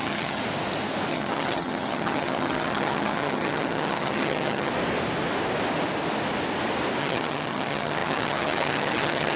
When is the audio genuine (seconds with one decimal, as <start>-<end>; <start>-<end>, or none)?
0.4-1.1; 4.7-7.0